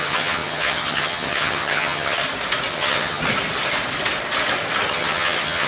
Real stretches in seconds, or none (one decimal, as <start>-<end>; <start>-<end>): 2.2-2.7; 3.2-4.9